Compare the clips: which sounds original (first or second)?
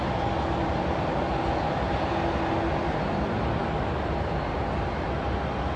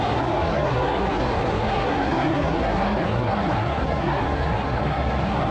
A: first